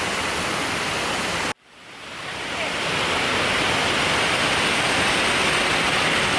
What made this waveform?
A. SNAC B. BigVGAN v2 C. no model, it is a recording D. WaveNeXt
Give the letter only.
C